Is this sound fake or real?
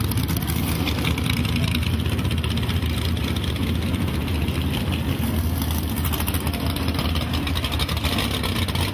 real